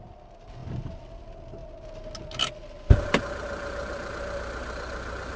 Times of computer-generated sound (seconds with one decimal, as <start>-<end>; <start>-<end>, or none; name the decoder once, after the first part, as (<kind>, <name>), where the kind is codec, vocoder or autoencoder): 0.6-1.2 (vocoder, BigVGAN v2)

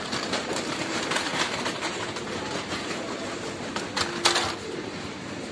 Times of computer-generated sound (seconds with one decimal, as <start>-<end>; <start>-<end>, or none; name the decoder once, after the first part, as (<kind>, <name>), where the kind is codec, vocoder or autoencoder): 0.0-1.3 (vocoder, BigVGAN v2); 4.6-5.5

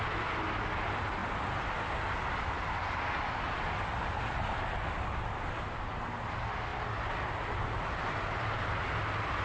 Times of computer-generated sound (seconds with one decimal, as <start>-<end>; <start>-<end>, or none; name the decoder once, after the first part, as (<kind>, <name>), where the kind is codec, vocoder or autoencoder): 6.7-8.8 (vocoder, BigVGAN v2)

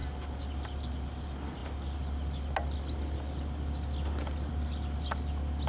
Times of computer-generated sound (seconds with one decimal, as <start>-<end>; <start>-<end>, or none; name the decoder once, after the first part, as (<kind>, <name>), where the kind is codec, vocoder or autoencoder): 0.0-0.5 (vocoder, BigVGAN v2)

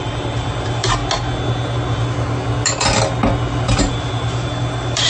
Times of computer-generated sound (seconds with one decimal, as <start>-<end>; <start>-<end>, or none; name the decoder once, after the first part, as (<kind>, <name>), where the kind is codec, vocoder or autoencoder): 0.0-1.0 (vocoder, BigVGAN v2); 3.8-5.1